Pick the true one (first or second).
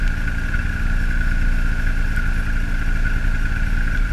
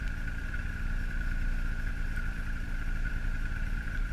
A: first